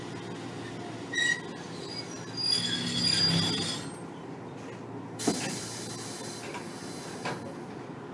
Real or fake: real